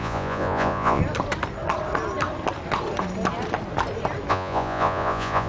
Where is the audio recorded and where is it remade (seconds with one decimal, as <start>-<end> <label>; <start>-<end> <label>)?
0.0-1.0 remade; 1.0-4.3 recorded; 4.3-5.5 remade